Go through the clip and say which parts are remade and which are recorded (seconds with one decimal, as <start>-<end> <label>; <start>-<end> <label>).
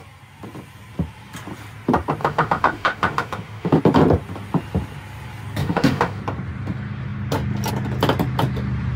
0.0-2.2 recorded; 2.2-3.8 remade; 3.8-5.6 recorded; 5.6-6.2 remade; 6.2-9.0 recorded